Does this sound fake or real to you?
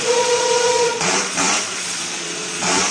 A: fake